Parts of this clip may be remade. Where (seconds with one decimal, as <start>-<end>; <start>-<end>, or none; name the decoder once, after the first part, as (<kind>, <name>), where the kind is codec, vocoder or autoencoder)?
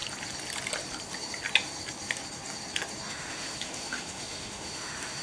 3.1-5.2 (autoencoder, DAC-VAE)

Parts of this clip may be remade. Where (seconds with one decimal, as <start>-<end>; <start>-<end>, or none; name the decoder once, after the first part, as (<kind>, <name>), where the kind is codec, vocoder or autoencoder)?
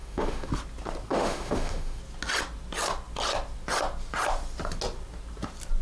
0.0-0.5 (autoencoder, DAC-VAE); 1.1-2.0